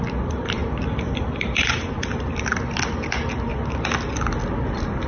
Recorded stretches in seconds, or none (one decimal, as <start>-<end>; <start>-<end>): 2.5-4.6

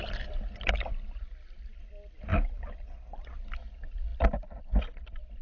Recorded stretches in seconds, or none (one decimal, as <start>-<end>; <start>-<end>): 0.0-5.4

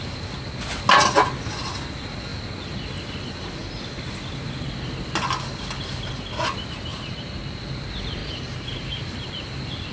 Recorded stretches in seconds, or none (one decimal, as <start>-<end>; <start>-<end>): 0.0-6.9; 7.6-8.2; 9.0-9.9

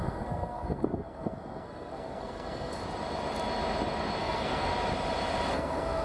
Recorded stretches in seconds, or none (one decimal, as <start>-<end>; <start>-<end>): 2.8-4.2; 4.7-5.5

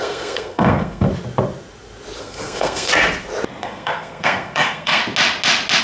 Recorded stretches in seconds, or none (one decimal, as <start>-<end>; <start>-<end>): 1.1-2.2; 2.9-3.6; 5.0-5.8

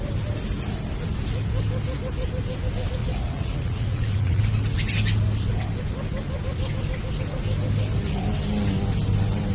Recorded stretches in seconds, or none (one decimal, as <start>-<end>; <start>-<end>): 0.0-3.0; 4.4-9.5

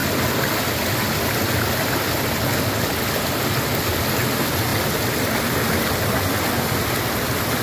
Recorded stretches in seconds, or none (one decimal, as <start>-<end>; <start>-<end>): 0.0-7.6

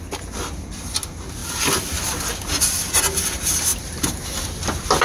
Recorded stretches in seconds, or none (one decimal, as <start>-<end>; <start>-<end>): 0.0-1.4; 2.6-5.0